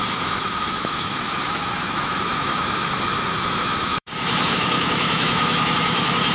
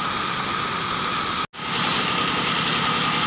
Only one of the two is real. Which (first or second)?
second